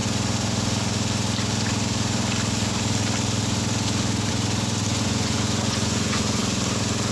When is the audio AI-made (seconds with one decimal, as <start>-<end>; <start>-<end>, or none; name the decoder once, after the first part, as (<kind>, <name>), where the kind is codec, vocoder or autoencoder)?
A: 4.9-6.4 (vocoder, Vocos)